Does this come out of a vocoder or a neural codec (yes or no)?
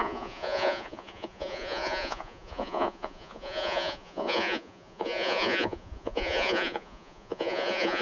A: yes